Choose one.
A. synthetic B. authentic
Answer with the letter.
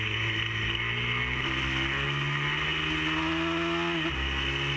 B